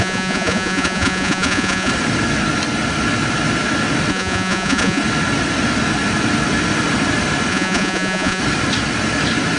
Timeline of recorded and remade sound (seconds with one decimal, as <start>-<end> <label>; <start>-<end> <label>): 0.0-1.9 remade; 1.9-4.1 recorded; 4.1-5.0 remade; 5.0-7.5 recorded; 7.5-8.4 remade; 8.4-9.6 recorded